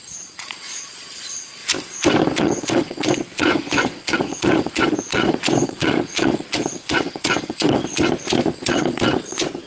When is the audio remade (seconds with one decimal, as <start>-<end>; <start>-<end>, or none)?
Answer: 0.0-1.6; 2.4-7.8; 8.6-9.7